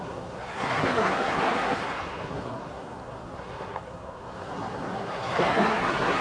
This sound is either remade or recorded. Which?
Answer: remade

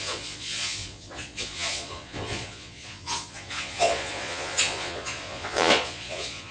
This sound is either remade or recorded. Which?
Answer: remade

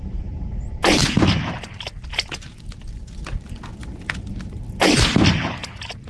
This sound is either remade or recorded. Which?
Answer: recorded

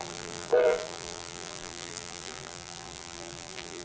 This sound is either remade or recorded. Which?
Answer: remade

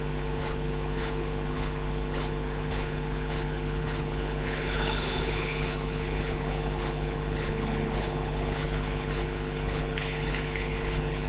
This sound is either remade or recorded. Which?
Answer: remade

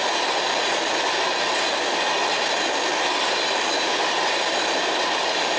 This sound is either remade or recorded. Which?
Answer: recorded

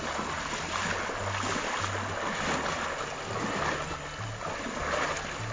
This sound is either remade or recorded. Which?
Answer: recorded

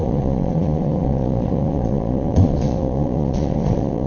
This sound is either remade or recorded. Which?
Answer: remade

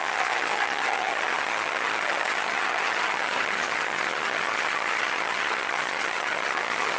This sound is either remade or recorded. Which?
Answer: remade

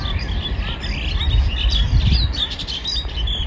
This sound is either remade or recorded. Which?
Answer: remade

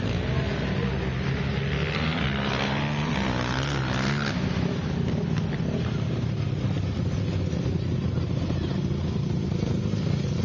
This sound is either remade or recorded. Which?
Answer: recorded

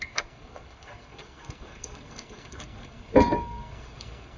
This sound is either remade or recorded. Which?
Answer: remade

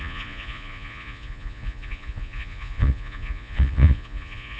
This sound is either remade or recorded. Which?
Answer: remade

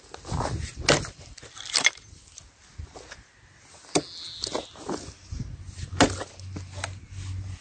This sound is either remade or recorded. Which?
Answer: recorded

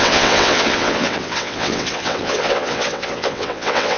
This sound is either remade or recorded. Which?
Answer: remade